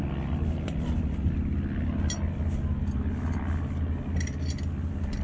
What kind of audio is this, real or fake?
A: real